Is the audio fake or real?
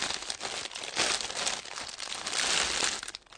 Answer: real